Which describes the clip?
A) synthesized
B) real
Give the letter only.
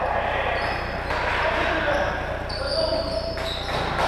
B